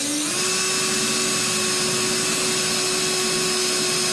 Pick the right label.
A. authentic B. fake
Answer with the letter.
A